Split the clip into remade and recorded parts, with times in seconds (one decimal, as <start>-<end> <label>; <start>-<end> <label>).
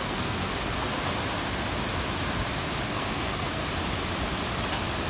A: 0.0-0.4 remade; 0.4-2.9 recorded; 2.9-3.6 remade; 3.6-5.1 recorded